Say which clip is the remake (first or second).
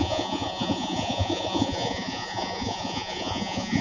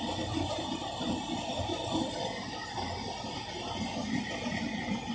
first